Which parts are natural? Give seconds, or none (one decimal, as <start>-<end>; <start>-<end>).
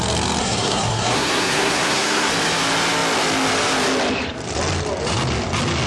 0.0-0.4; 2.3-5.9